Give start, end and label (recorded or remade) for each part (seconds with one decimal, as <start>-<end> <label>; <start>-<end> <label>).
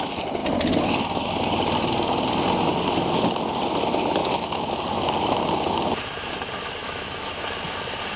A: 0.0-4.2 recorded; 4.2-4.7 remade; 4.7-6.8 recorded; 6.8-7.3 remade; 7.3-8.2 recorded